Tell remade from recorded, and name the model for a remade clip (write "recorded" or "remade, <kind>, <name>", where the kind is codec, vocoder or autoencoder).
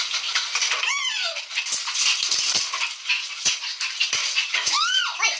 recorded